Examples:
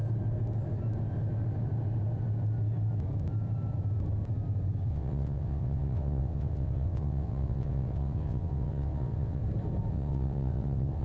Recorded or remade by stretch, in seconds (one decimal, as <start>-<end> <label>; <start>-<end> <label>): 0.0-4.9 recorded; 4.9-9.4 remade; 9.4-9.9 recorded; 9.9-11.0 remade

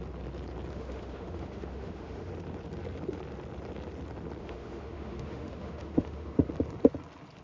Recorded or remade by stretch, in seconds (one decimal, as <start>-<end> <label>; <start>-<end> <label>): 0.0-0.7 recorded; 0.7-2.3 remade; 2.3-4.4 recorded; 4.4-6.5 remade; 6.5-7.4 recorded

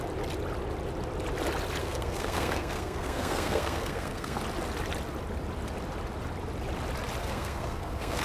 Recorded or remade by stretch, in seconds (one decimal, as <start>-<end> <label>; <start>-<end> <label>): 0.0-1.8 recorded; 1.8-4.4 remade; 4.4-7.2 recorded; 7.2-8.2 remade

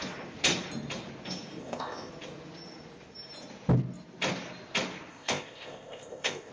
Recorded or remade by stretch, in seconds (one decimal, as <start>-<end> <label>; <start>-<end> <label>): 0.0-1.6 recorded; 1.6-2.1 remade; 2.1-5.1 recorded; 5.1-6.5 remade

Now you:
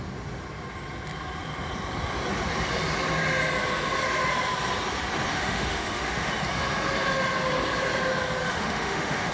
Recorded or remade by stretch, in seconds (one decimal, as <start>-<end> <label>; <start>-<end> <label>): 0.0-5.3 recorded; 5.3-6.3 remade; 6.3-8.4 recorded; 8.4-9.3 remade

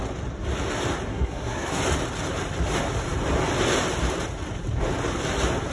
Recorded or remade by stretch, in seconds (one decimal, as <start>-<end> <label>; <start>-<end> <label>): 0.0-1.1 recorded; 1.1-1.8 remade; 1.8-5.7 recorded

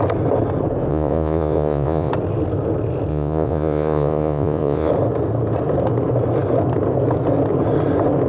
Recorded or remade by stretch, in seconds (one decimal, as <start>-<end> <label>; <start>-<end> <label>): 0.0-0.9 recorded; 0.9-2.1 remade; 2.1-3.1 recorded; 3.1-4.9 remade; 4.9-8.3 recorded

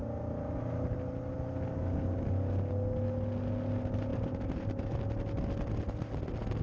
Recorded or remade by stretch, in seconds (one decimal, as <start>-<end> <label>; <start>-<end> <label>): 0.0-4.1 recorded; 4.1-5.0 remade; 5.0-6.6 recorded